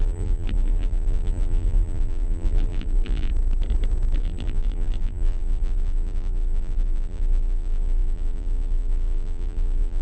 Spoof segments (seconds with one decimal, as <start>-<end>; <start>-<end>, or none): 0.0-3.3; 4.2-10.0